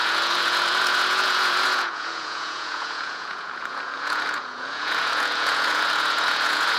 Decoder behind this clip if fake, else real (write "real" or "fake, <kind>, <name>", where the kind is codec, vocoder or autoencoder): fake, vocoder, Vocos